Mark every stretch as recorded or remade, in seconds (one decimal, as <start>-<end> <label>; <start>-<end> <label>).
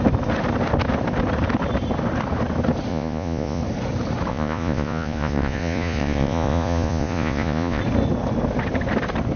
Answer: 0.0-2.9 recorded; 2.9-3.6 remade; 3.6-4.3 recorded; 4.3-7.8 remade; 7.8-9.4 recorded